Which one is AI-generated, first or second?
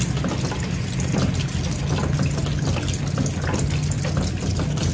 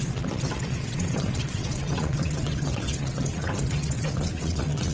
second